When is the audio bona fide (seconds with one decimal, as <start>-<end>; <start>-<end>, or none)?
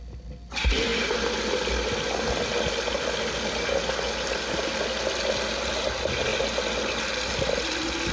0.0-8.1